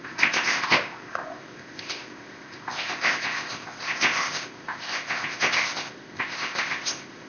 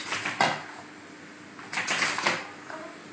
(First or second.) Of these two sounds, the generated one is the first